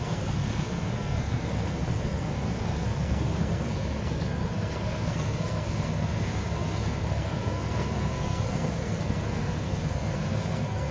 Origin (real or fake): fake